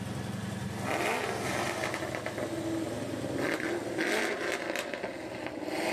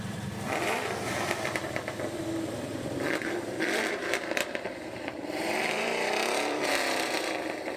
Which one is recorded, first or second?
first